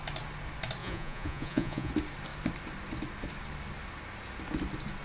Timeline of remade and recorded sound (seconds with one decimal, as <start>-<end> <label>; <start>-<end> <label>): 0.0-0.8 recorded; 0.8-1.9 remade; 1.9-5.0 recorded